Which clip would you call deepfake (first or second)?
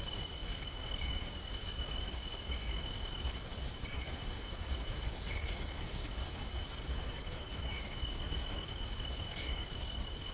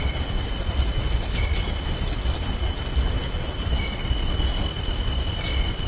first